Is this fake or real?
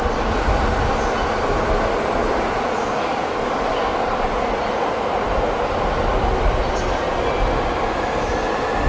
real